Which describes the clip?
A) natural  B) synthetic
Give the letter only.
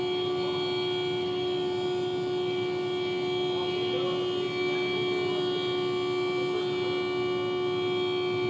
A